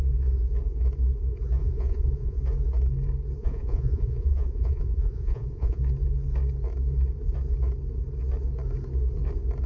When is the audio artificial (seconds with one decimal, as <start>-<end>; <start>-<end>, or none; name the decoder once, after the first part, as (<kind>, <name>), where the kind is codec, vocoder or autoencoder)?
1.6-2.4 (vocoder, Vocos); 3.4-5.8